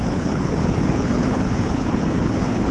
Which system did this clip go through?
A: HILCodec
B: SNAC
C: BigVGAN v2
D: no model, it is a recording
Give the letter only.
A